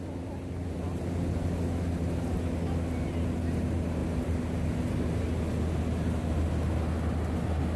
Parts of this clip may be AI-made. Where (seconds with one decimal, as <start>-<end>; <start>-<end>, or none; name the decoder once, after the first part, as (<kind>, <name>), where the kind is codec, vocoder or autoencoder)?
none